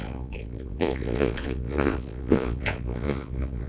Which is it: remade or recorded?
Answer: remade